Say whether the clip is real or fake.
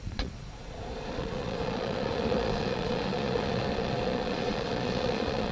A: fake